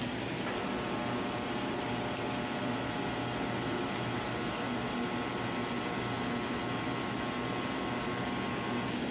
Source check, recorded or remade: recorded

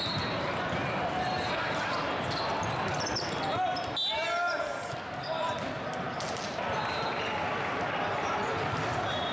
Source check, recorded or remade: recorded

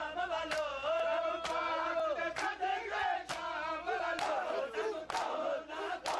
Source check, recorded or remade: recorded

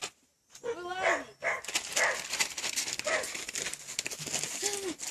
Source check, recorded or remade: recorded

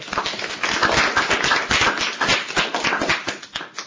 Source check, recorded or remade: recorded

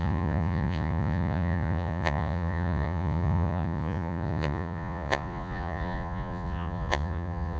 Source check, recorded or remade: remade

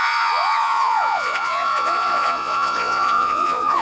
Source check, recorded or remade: remade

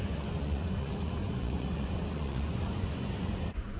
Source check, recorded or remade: remade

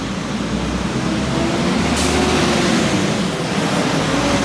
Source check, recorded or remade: recorded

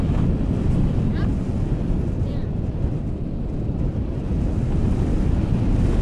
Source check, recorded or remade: recorded